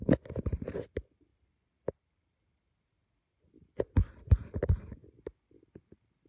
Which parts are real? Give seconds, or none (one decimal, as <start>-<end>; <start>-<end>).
0.0-1.3; 2.5-6.3